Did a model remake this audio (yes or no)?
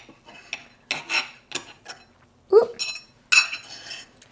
no